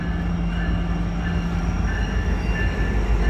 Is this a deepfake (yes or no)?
no